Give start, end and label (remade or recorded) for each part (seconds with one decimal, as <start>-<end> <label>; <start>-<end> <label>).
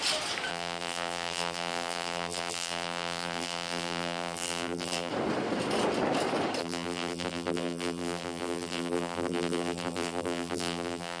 0.0-0.5 recorded; 0.5-5.1 remade; 5.1-6.6 recorded; 6.6-11.2 remade